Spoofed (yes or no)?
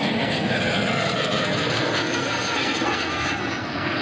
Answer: yes